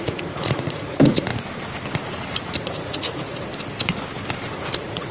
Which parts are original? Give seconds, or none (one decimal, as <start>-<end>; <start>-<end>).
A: 1.3-2.6; 3.5-4.5